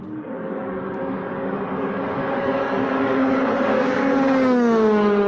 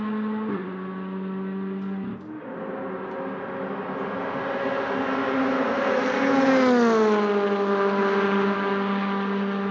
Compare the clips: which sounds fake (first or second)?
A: first